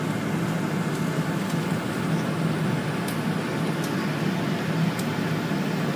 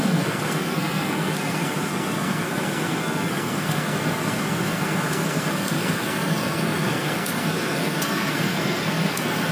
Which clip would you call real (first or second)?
first